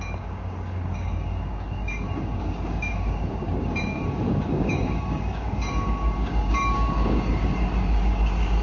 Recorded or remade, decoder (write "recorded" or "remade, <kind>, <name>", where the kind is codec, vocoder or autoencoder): remade, codec, DAC